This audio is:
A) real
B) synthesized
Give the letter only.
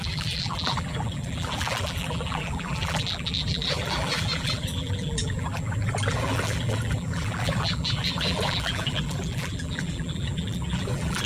B